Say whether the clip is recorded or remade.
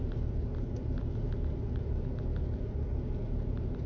recorded